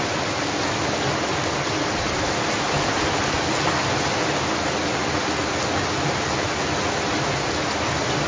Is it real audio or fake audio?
real